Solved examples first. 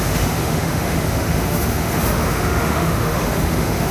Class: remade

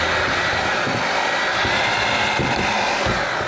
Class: recorded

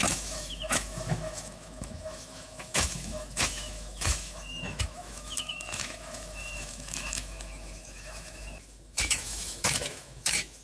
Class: remade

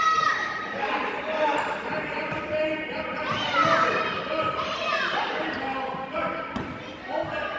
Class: recorded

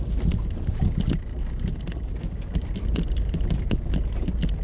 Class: recorded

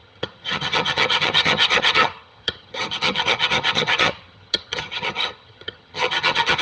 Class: remade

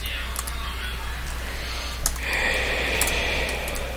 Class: recorded